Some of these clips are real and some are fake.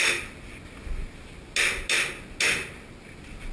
real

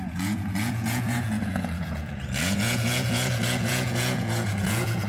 fake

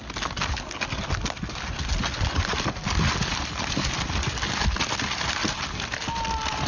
real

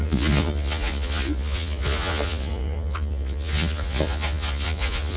fake